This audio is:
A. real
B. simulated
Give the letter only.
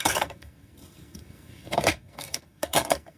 B